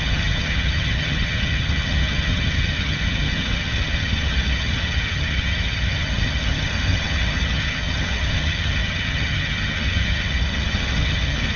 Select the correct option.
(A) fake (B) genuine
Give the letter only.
A